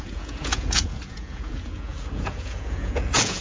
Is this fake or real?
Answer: fake